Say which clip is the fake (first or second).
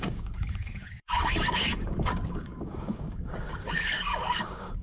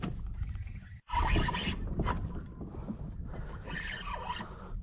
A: first